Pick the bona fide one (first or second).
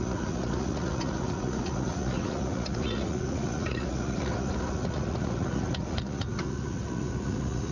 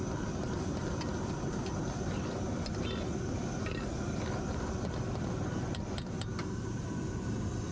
second